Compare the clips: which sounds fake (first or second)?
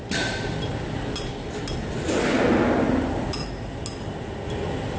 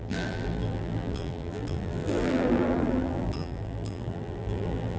second